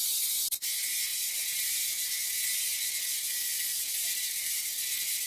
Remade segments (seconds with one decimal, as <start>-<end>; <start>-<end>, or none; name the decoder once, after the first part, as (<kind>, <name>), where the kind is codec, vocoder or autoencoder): 1.1-2.4 (vocoder, BigVGAN v2); 3.8-4.7